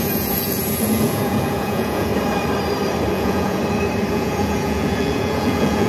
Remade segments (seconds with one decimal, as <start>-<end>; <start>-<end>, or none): 0.0-2.1; 3.1-3.6; 4.1-5.9